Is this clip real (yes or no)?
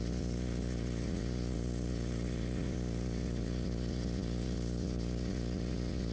no